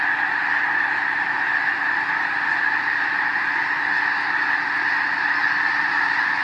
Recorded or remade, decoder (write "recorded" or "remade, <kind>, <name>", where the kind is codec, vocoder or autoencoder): recorded